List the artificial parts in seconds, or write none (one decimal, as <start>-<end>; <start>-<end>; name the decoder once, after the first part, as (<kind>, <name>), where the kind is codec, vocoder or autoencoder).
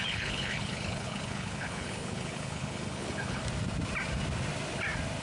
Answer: 0.0-3.4 (codec, HILCodec)